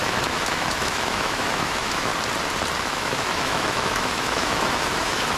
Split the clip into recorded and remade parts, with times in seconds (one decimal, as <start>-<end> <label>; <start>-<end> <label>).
0.0-2.1 remade; 2.1-2.8 recorded; 2.8-5.4 remade